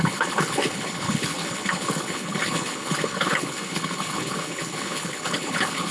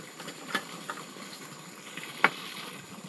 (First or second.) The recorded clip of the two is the second